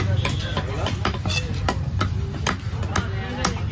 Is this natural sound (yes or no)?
yes